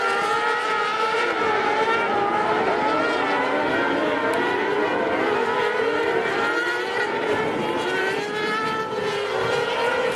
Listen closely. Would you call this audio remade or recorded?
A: recorded